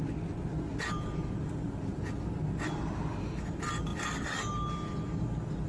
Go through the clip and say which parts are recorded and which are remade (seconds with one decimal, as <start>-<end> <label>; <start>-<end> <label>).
0.0-0.7 recorded; 0.7-1.5 remade; 1.5-5.7 recorded